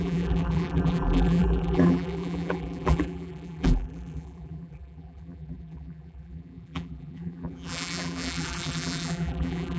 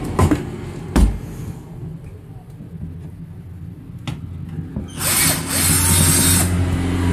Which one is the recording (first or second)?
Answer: second